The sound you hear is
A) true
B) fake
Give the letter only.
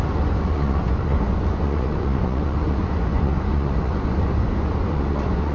B